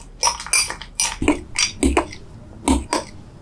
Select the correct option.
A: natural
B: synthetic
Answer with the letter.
A